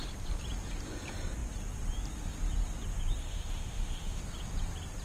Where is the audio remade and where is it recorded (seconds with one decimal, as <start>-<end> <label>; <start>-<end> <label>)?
0.0-3.2 recorded; 3.2-4.2 remade; 4.2-5.0 recorded